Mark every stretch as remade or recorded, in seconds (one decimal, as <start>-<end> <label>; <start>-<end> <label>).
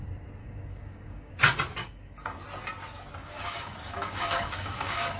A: 0.0-0.4 recorded; 0.4-1.3 remade; 1.3-1.8 recorded; 1.8-2.4 remade; 2.4-3.2 recorded; 3.2-5.2 remade